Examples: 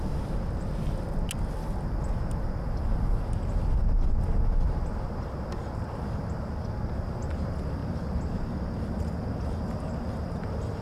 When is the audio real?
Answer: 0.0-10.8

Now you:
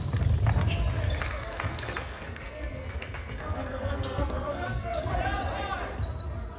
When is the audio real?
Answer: 0.0-1.2; 5.1-6.6